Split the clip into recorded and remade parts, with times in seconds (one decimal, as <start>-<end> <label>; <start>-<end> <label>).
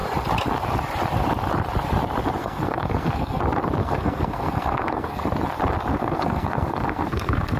0.0-2.4 recorded; 2.4-3.4 remade; 3.4-3.8 recorded; 3.8-5.2 remade; 5.2-5.9 recorded; 5.9-7.6 remade